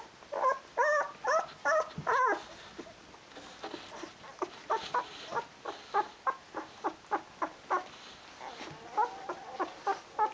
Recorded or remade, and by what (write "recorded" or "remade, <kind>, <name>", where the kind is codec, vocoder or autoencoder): recorded